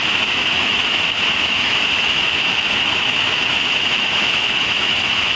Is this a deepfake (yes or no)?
yes